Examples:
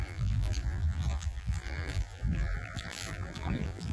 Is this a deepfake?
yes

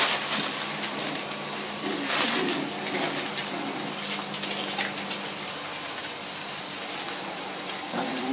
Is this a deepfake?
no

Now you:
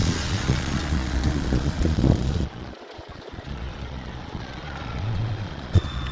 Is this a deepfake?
yes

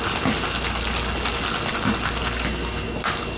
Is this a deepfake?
no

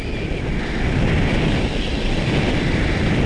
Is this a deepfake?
no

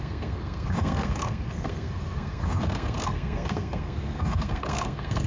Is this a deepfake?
yes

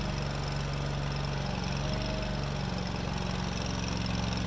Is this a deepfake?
no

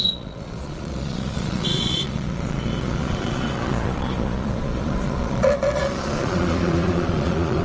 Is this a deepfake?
yes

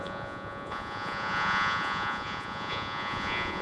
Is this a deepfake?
yes